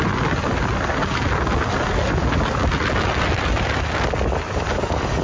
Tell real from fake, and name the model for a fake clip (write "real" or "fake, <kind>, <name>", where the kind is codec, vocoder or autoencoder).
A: real